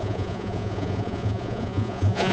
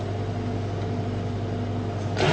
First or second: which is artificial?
first